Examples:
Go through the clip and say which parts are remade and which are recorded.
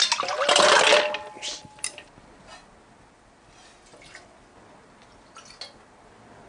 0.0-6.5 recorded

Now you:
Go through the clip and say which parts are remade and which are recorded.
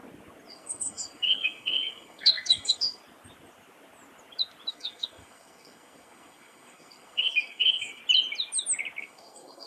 0.0-0.5 recorded; 0.5-3.0 remade; 3.0-4.7 recorded; 4.7-8.0 remade; 8.0-9.0 recorded; 9.0-9.7 remade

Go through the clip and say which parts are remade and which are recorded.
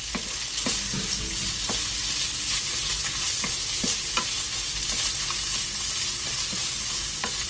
0.0-6.3 recorded; 6.3-6.9 remade; 6.9-7.5 recorded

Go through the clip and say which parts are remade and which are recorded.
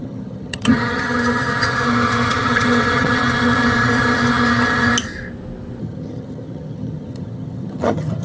0.0-4.9 remade; 4.9-5.8 recorded; 5.8-8.2 remade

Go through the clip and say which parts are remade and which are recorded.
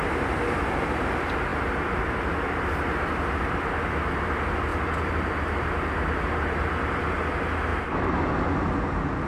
0.0-4.7 recorded; 4.7-5.8 remade; 5.8-7.7 recorded; 7.7-8.3 remade; 8.3-9.3 recorded